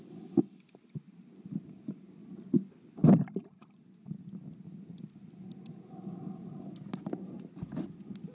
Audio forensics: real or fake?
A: real